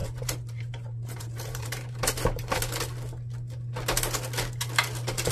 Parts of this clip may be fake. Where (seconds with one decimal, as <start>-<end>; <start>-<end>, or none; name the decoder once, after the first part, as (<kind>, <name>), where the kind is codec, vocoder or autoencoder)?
0.0-2.6 (vocoder, BigVGAN v2)